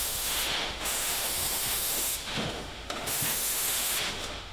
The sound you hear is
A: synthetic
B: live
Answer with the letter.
A